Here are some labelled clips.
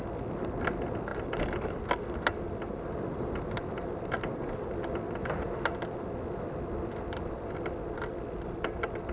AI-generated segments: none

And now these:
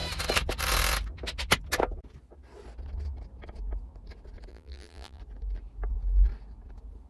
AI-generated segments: 4.5-5.2 (vocoder, BigVGAN v2)